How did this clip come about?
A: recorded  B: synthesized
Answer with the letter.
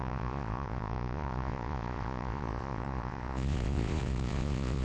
B